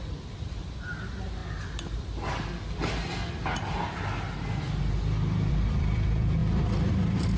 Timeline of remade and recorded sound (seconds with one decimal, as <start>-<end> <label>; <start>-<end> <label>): 0.0-1.4 remade; 1.4-5.5 recorded; 5.5-7.4 remade